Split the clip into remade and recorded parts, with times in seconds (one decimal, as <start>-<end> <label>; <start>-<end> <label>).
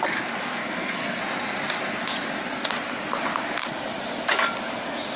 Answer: 0.0-0.6 recorded; 0.6-1.2 remade; 1.2-5.2 recorded